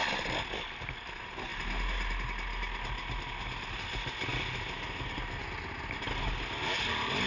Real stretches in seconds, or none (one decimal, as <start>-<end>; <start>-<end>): 0.0-7.3